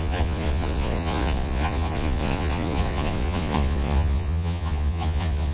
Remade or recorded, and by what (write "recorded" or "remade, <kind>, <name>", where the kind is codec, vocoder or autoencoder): remade, vocoder, Vocos